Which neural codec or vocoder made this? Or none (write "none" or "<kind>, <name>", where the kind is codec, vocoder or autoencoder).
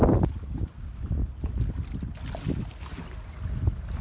none